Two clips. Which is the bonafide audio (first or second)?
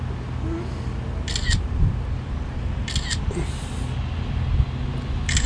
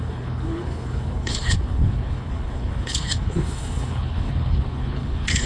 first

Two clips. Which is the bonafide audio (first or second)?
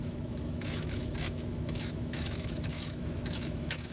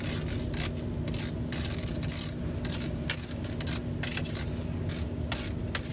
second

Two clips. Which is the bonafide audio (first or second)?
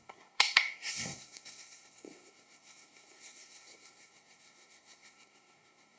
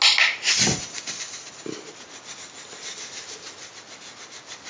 second